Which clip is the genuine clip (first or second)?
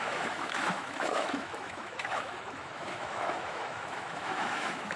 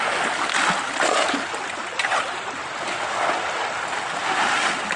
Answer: second